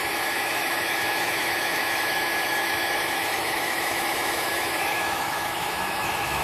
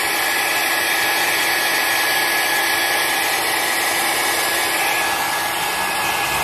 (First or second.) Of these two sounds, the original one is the second